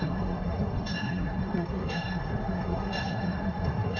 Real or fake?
fake